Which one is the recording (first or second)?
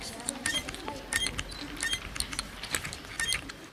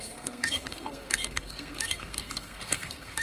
first